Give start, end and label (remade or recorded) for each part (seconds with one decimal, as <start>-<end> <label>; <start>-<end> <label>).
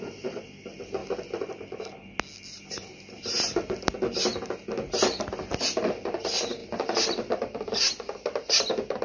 0.0-6.6 recorded; 6.6-8.5 remade; 8.5-9.0 recorded